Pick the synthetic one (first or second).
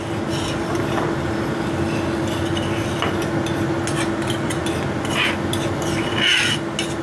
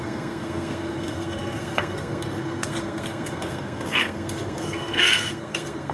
second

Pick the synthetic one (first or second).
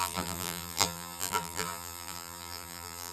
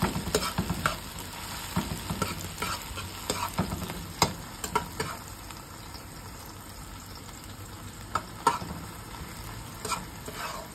first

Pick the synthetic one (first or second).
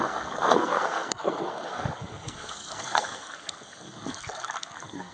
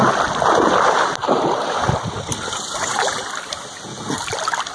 first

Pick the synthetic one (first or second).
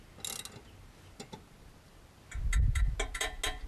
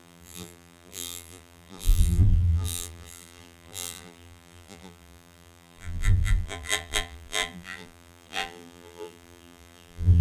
second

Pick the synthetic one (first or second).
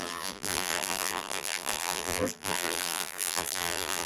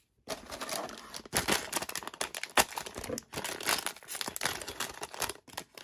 first